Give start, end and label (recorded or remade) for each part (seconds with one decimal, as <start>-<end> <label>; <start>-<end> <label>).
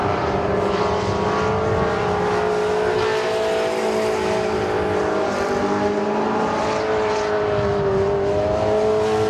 0.0-0.8 remade; 0.8-9.3 recorded